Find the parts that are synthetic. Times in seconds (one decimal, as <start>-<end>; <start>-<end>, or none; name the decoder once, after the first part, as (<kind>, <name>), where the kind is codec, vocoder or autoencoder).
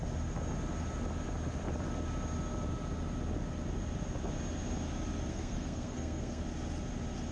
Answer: 5.3-6.4 (codec, SNAC)